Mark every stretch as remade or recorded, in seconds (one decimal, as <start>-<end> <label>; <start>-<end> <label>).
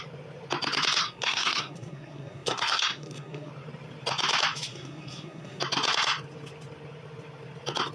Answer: 0.0-1.0 recorded; 1.0-3.5 remade; 3.5-4.7 recorded; 4.7-5.6 remade; 5.6-7.9 recorded